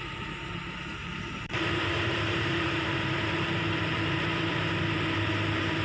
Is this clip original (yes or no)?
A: no